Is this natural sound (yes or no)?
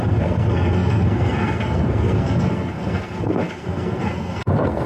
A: no